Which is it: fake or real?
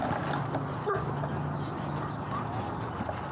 real